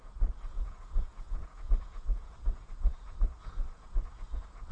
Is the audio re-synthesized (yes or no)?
yes